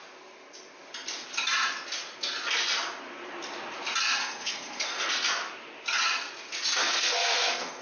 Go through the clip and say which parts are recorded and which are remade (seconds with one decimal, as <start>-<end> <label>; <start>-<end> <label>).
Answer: 0.0-4.2 recorded; 4.2-5.1 remade; 5.1-6.8 recorded; 6.8-7.8 remade